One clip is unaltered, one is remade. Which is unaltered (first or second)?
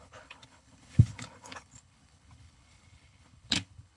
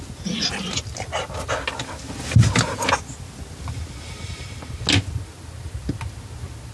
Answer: second